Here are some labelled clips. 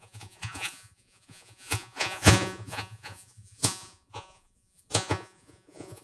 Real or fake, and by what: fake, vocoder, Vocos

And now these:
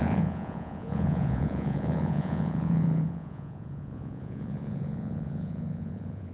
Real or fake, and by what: fake, vocoder, Vocos